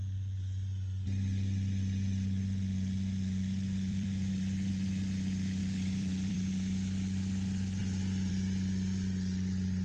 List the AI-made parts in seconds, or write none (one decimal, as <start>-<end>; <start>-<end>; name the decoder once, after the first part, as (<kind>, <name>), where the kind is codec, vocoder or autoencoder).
3.9-4.7 (vocoder, BigVGAN v2); 5.6-6.4